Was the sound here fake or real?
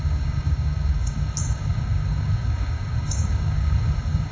fake